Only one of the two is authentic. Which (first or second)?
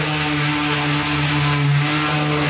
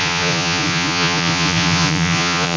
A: first